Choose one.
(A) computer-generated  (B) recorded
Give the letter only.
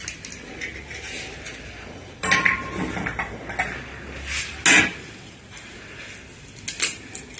B